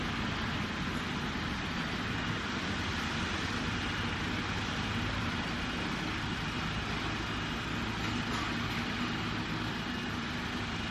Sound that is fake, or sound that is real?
real